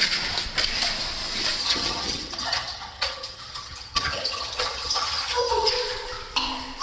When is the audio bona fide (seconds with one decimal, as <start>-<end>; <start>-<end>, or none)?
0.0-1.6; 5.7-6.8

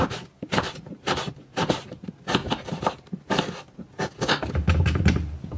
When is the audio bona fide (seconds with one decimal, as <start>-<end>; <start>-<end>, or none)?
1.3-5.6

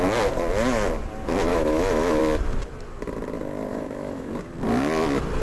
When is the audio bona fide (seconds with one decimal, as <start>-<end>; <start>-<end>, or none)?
0.0-1.5; 2.2-3.7; 4.3-5.4

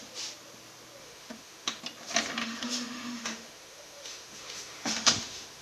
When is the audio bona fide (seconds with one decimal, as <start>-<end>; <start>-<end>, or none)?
0.0-1.0; 1.8-2.4